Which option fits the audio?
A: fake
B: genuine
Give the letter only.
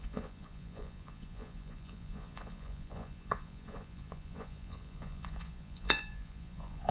A